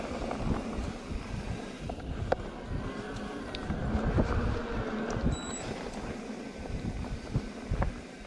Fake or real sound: real